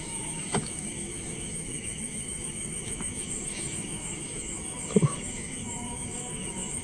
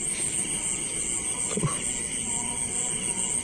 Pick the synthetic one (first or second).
first